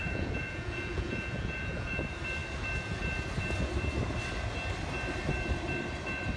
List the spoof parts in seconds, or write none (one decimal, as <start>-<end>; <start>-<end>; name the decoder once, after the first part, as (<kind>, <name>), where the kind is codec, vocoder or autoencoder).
0.0-2.0 (vocoder, Vocos)